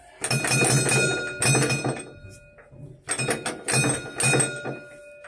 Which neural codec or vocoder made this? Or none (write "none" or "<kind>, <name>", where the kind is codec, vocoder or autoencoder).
none